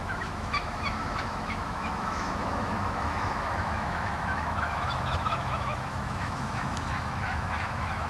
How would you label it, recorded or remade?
remade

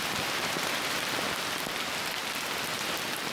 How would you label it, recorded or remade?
recorded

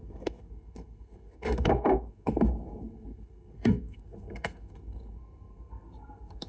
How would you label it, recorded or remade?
remade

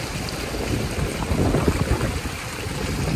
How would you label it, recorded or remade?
recorded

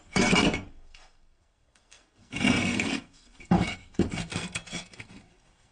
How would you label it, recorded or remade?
remade